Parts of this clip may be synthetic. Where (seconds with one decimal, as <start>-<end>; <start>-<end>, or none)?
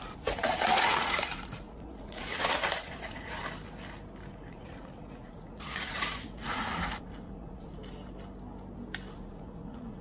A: 0.0-3.4; 4.3-7.8; 9.1-10.0